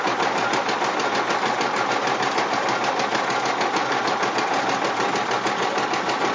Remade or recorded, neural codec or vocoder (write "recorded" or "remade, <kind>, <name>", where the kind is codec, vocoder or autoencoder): recorded